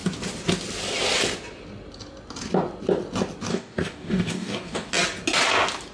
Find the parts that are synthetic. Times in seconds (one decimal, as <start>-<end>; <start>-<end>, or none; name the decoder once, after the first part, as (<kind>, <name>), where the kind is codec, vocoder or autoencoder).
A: 3.5-4.9 (codec, DAC)